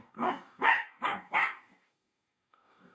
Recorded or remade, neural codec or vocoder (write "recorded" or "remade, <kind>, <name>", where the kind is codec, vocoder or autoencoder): remade, codec, DAC